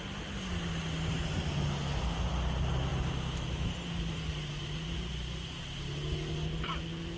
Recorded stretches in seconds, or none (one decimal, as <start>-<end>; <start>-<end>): 0.0-7.2